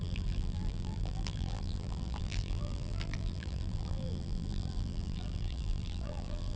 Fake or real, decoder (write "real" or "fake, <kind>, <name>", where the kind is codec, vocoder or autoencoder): fake, vocoder, BigVGAN v2